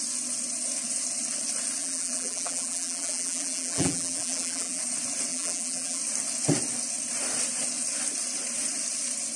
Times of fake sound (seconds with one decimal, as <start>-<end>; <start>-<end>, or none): 1.8-4.8; 5.3-6.0